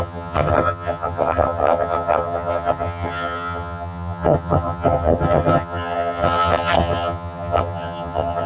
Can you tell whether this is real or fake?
fake